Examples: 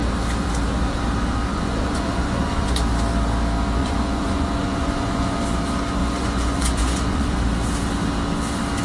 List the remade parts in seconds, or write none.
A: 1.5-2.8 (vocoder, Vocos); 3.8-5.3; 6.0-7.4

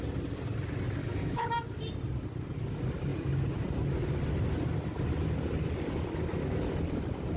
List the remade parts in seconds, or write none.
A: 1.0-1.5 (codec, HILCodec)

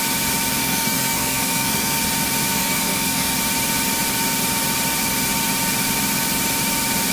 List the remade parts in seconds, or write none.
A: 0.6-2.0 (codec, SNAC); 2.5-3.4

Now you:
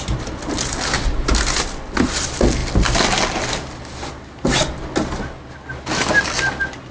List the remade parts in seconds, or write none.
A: none

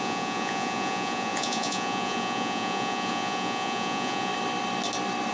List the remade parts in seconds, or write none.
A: 0.0-4.3 (vocoder, Vocos)

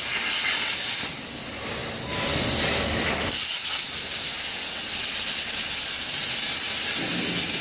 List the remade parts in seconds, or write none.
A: none

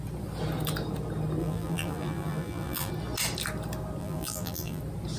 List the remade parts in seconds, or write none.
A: 1.4-2.9 (vocoder, BigVGAN v2); 4.0-4.8